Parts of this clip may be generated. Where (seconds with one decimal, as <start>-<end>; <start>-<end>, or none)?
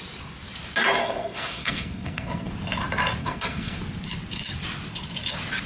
1.0-2.5; 3.2-3.8